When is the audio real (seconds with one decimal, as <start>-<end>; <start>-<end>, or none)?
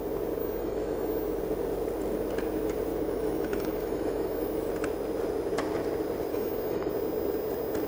0.0-0.4; 1.4-2.9; 4.7-6.3; 6.9-7.9